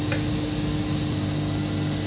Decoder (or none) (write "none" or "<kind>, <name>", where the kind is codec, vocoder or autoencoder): none